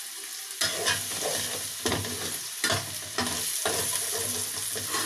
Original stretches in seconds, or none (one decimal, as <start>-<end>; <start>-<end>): 0.0-5.1